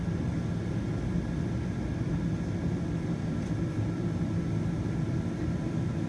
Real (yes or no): yes